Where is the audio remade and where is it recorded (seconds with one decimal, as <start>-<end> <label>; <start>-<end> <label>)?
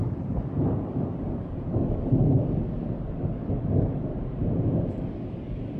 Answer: 0.0-4.1 remade; 4.1-4.9 recorded; 4.9-5.8 remade